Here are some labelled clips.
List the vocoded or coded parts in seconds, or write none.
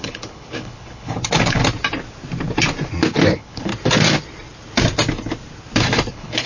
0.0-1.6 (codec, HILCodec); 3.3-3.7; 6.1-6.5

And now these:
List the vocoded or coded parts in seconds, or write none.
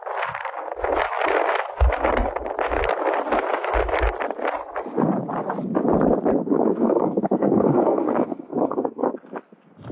6.4-9.1 (codec, SNAC)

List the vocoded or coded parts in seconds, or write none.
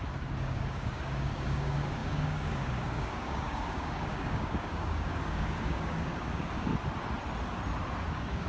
0.0-6.7 (codec, DAC); 8.1-8.5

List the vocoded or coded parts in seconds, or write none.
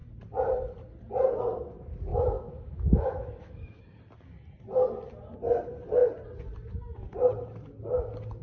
2.1-3.8 (autoencoder, DAC-VAE)